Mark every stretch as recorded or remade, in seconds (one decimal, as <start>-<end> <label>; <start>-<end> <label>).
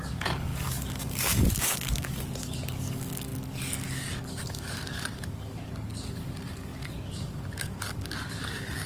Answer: 0.0-8.9 remade